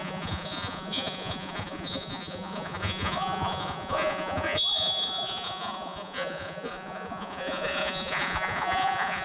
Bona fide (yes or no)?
no